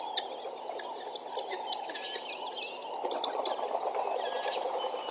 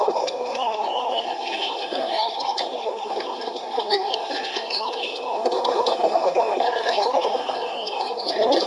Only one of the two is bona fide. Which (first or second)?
first